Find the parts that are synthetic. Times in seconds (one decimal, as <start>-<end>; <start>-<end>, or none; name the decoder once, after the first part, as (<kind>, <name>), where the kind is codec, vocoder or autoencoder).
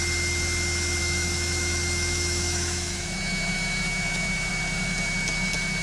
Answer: 1.0-4.5 (autoencoder, DAC-VAE)